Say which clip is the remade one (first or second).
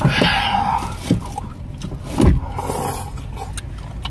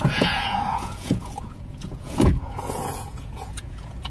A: second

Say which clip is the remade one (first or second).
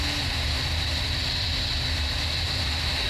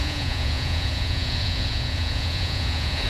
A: second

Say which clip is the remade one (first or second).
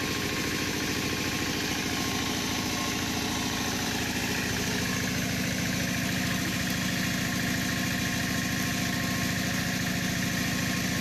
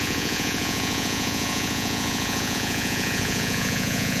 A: second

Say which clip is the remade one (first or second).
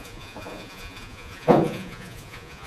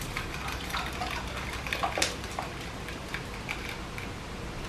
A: first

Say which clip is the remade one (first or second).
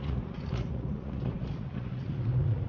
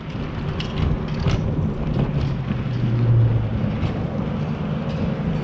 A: first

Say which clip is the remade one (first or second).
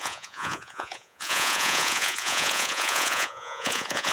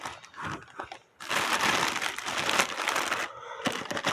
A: first